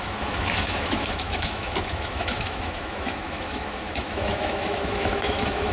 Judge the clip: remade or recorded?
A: remade